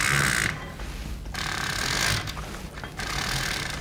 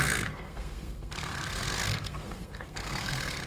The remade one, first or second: second